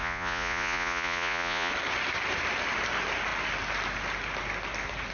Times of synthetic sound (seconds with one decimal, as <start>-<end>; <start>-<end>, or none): 0.0-1.7